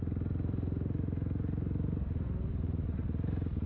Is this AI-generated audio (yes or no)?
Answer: no